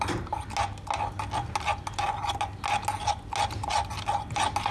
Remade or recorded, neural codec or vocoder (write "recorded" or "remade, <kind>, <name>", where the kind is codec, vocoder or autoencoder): recorded